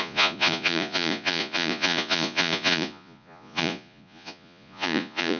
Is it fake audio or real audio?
fake